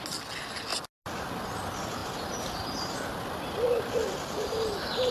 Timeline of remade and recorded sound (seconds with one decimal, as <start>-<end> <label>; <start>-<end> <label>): 0.0-5.1 recorded